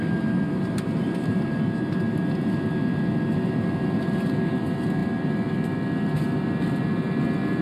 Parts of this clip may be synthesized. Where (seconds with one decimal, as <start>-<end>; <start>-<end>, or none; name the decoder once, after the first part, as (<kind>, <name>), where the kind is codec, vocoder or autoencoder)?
none